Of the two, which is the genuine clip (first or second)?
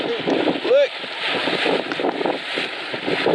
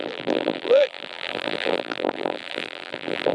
first